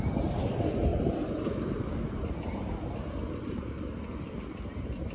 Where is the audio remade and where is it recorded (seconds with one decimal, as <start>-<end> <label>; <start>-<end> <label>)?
0.0-5.1 recorded